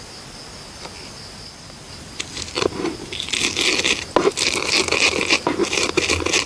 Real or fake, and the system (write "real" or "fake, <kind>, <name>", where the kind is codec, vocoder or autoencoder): real